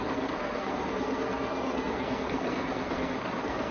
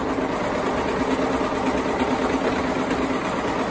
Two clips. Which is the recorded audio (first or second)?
second